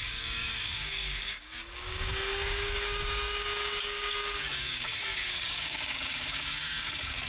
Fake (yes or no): yes